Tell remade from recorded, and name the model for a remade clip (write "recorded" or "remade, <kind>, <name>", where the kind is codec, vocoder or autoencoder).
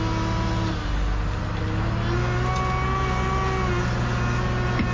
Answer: recorded